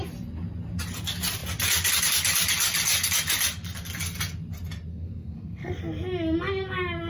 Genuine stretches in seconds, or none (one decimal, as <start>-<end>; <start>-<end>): 0.0-4.9; 5.8-7.1